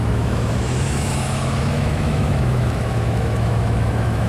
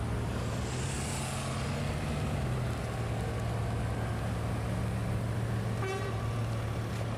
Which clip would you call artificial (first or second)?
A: first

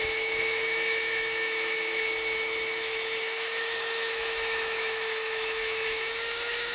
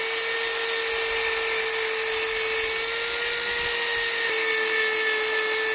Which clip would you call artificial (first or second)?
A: first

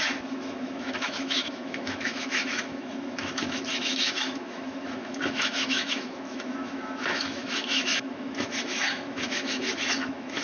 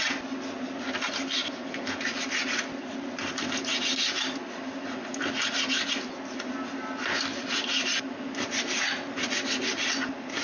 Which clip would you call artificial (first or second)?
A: first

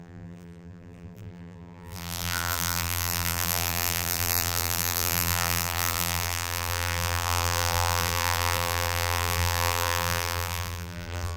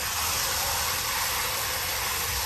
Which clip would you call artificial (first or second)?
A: first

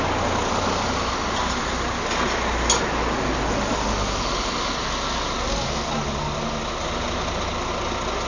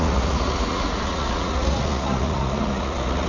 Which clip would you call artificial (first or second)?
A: second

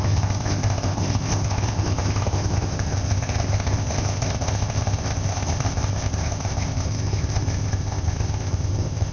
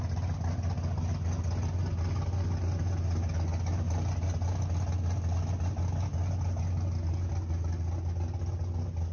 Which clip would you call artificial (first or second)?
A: first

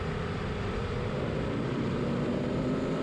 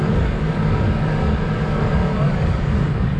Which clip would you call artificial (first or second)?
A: second